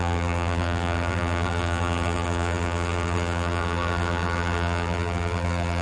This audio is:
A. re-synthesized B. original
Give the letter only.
A